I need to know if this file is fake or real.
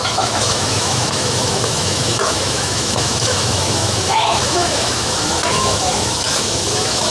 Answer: fake